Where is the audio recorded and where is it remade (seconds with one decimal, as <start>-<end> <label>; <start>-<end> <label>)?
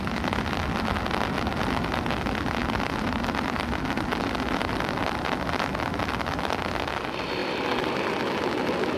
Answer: 0.0-9.0 recorded